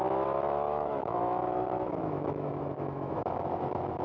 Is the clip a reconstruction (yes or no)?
yes